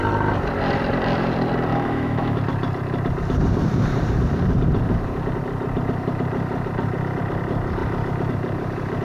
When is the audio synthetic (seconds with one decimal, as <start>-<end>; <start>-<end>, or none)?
1.7-2.4

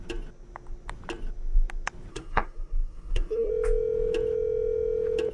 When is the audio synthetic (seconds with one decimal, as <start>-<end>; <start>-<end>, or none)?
2.1-3.5

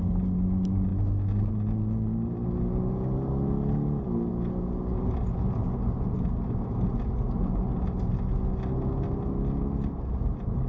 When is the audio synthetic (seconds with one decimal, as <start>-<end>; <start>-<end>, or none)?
none

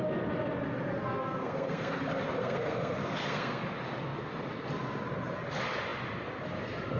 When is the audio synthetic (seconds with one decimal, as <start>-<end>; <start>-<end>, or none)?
1.2-1.9; 2.4-3.6

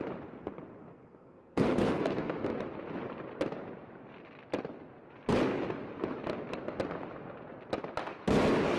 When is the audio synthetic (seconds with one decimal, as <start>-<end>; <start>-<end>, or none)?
0.9-2.6

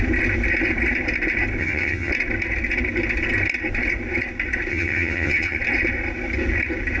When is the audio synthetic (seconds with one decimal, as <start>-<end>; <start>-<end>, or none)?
1.6-2.1; 4.7-5.6

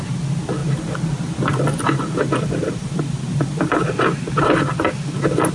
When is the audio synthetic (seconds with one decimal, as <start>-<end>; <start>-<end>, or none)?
0.6-3.9